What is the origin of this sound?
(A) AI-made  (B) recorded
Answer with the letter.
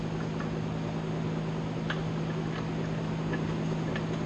B